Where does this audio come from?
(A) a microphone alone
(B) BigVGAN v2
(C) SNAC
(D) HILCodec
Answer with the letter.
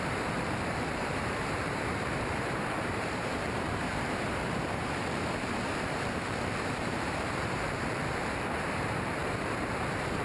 B